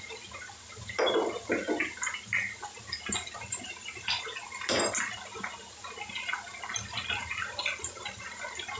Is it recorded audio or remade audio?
recorded